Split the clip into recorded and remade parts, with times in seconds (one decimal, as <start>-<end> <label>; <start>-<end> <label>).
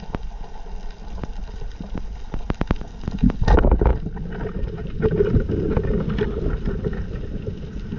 0.0-8.0 recorded